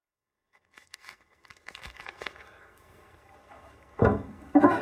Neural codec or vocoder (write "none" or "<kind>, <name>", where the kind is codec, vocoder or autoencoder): codec, SNAC